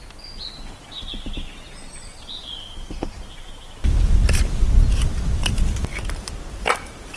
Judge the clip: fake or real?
real